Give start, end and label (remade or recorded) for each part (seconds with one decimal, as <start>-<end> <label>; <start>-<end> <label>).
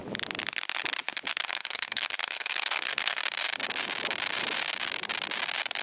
0.0-1.3 recorded; 1.3-3.2 remade; 3.2-5.8 recorded